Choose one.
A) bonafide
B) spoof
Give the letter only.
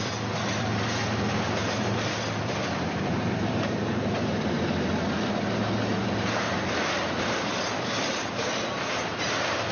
B